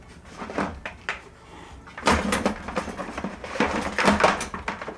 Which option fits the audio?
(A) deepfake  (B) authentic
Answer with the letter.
B